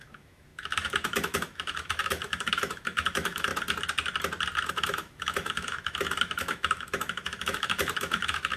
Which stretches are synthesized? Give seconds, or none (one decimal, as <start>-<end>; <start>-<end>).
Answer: 0.0-3.5; 4.7-8.6